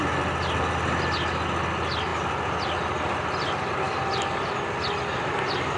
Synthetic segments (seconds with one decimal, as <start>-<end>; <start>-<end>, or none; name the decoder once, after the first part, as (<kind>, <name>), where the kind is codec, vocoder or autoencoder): none